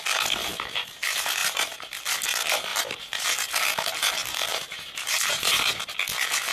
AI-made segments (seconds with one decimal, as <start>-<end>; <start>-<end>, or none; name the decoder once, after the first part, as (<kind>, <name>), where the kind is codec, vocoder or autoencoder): 1.4-2.0 (vocoder, BigVGAN v2); 2.7-3.3; 4.5-5.9